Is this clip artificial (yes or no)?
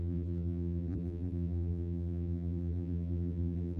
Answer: yes